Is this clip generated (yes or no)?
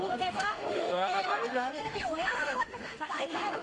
yes